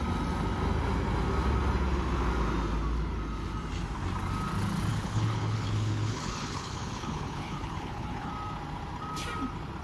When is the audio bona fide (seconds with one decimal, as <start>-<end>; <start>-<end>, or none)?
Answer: 0.0-4.9; 8.3-9.8

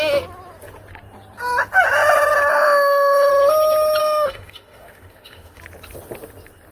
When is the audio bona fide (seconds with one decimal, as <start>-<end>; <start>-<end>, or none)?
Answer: 0.0-2.5; 3.3-4.0; 5.6-6.7

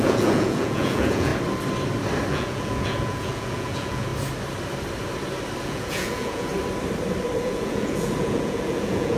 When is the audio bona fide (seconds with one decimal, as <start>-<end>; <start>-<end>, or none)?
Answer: 1.3-2.3; 4.1-5.6; 6.5-7.4

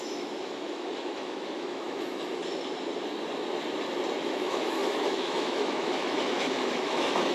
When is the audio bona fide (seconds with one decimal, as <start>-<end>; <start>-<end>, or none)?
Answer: 2.4-4.2

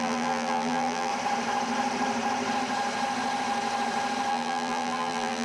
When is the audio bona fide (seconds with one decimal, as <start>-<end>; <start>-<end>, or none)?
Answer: 1.1-4.3